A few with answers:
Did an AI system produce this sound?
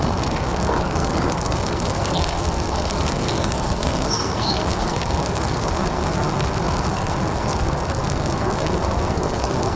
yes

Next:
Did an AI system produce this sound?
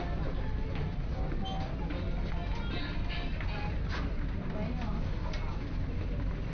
no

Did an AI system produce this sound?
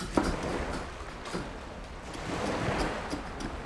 no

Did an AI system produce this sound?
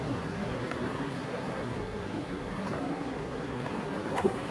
yes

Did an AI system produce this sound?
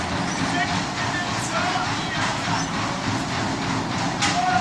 no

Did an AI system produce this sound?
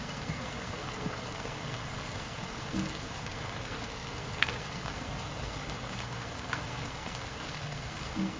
yes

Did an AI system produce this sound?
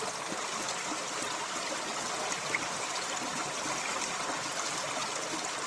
no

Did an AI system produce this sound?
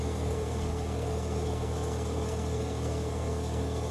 yes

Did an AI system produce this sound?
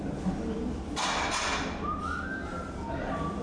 no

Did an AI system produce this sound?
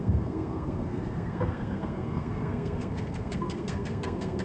yes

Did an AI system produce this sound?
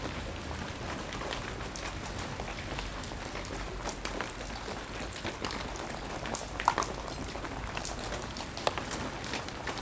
no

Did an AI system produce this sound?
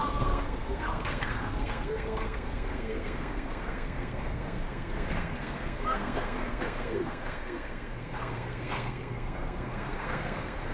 yes